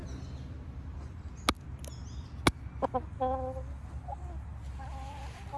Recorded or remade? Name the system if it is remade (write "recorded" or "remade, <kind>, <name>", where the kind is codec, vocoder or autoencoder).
recorded